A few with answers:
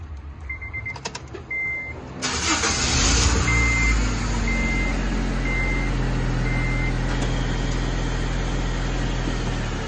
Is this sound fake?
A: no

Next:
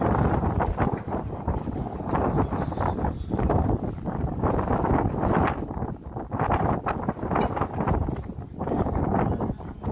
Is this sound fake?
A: no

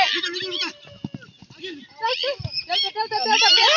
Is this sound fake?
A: no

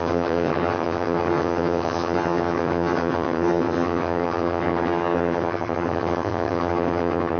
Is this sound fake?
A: yes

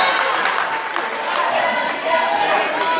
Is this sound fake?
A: no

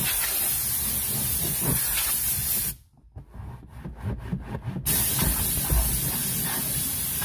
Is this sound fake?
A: no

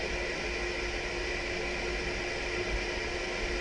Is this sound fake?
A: no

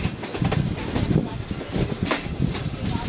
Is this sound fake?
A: no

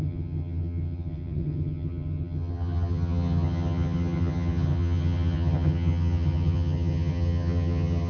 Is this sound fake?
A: yes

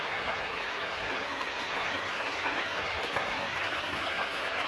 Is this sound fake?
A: yes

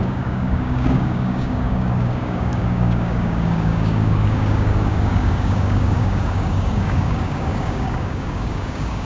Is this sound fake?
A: yes